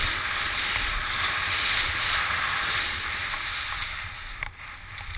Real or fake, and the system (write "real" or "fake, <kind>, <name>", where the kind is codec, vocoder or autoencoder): real